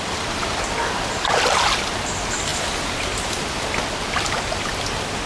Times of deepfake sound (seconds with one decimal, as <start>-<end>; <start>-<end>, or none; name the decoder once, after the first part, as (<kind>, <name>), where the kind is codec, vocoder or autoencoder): none